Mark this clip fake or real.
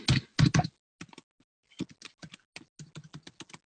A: real